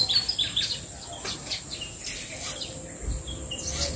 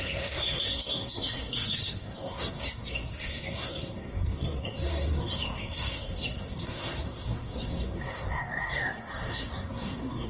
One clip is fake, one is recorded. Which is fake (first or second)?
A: second